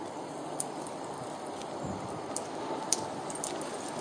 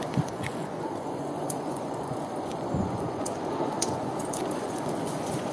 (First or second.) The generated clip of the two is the second